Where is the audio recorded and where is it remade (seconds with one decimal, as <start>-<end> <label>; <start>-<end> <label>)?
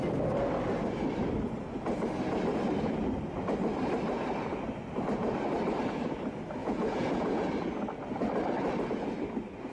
0.0-6.6 recorded; 6.6-7.5 remade; 7.5-9.7 recorded